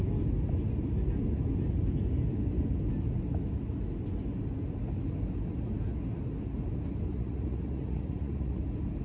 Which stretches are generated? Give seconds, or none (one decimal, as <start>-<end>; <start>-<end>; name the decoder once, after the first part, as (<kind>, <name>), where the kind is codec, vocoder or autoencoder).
7.1-8.6 (vocoder, Vocos)